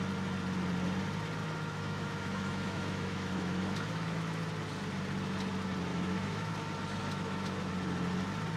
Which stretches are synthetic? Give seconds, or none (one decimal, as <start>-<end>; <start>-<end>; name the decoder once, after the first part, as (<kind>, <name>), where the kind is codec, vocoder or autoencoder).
1.4-4.4 (autoencoder, DAC-VAE); 5.9-6.5; 7.0-7.7